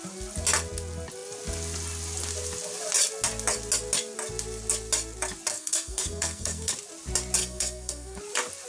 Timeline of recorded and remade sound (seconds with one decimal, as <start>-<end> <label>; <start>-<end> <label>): 0.0-5.5 recorded; 5.5-6.7 remade; 6.7-7.4 recorded; 7.4-8.2 remade; 8.2-8.7 recorded